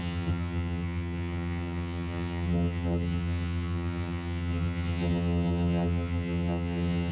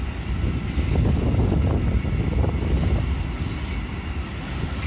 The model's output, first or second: first